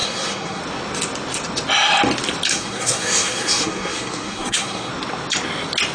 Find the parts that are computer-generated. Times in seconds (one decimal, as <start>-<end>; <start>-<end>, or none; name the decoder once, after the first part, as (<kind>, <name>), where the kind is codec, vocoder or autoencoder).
0.0-0.6 (codec, SNAC); 2.5-4.9